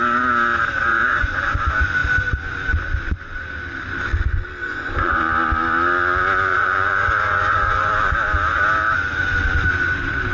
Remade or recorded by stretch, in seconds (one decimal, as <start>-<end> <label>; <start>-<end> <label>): 0.0-0.9 recorded; 0.9-1.6 remade; 1.6-4.6 recorded; 4.6-5.3 remade; 5.3-6.5 recorded; 6.5-7.9 remade; 7.9-10.3 recorded